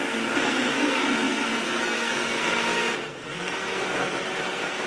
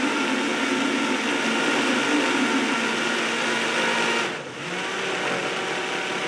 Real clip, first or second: second